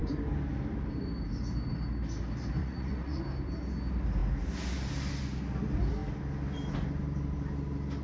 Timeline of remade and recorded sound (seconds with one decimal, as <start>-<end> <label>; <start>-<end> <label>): 0.0-2.6 recorded; 2.6-3.2 remade; 3.2-8.0 recorded